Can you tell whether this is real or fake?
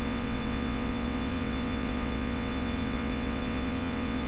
fake